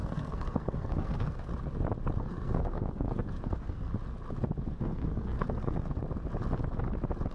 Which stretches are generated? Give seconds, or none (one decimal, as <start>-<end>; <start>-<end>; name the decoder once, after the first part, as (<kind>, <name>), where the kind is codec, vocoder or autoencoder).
0.0-1.5 (codec, SNAC); 2.2-3.9; 4.8-6.0